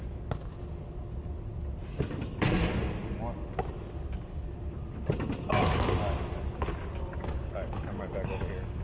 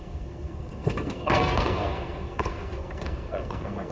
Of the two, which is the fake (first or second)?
second